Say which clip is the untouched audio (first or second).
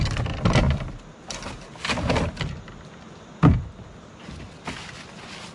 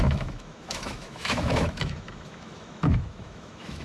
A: first